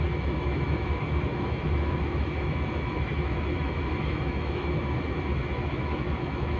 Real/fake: fake